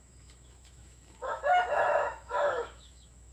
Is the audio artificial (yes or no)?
yes